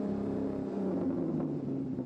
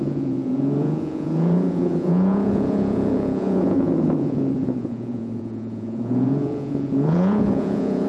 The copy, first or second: second